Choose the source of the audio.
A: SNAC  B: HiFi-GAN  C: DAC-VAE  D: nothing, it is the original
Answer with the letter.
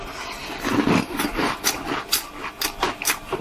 D